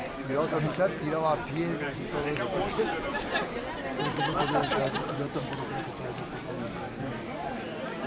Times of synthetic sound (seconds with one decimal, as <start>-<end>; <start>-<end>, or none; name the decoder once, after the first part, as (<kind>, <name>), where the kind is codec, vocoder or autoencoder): none